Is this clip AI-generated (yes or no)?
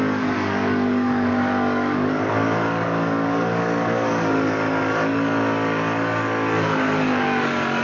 yes